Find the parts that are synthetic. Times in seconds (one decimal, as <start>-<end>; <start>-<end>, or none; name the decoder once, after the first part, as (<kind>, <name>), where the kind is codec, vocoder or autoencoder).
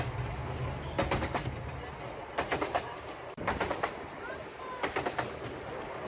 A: none